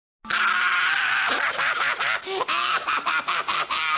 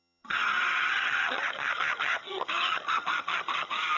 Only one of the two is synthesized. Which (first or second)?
second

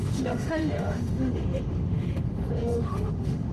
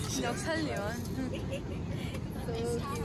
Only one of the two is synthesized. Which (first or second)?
first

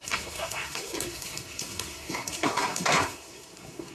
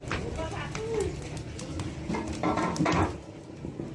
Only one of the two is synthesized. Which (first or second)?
first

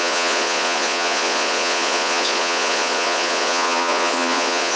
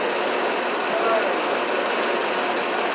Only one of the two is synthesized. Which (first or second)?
first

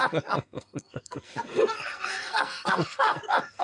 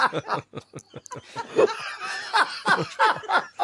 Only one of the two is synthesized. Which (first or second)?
first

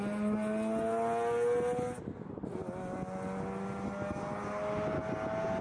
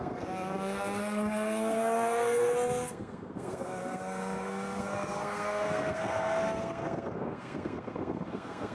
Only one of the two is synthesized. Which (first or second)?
second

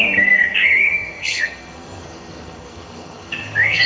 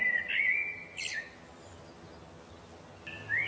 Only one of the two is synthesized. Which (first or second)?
first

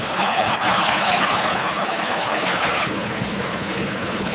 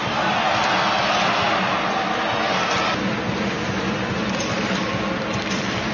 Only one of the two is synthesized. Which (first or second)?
first